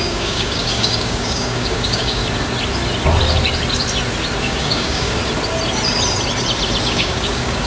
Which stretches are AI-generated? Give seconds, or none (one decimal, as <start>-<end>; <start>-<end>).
0.0-2.2; 4.4-5.2; 6.8-7.7